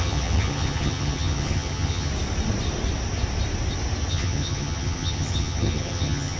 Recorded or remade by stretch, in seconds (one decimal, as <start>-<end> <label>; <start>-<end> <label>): 0.0-2.1 remade; 2.1-4.1 recorded; 4.1-6.4 remade